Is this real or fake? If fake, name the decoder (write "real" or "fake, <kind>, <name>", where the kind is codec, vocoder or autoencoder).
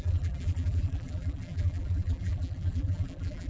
fake, vocoder, BigVGAN v2